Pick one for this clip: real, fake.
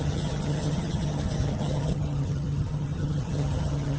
fake